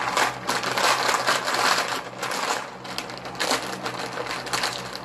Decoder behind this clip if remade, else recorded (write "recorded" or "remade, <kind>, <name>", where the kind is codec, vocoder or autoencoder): recorded